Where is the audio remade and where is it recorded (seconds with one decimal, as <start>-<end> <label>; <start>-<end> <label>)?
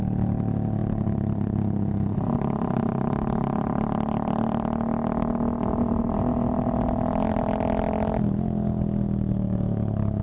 0.0-10.2 recorded